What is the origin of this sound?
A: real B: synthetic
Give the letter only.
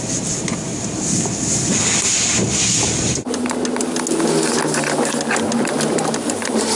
A